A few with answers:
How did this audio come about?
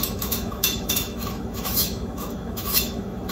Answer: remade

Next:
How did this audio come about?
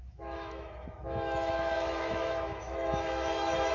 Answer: remade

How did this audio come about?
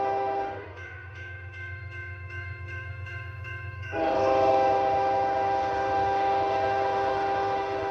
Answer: remade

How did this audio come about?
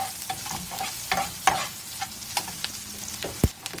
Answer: recorded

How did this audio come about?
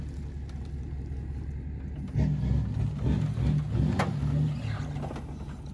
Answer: recorded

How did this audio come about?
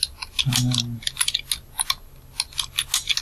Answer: recorded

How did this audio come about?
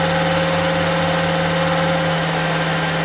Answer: recorded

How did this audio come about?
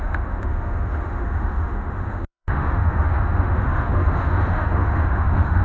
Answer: remade